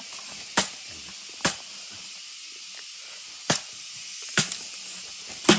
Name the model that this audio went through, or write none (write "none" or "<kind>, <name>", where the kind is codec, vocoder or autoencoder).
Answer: none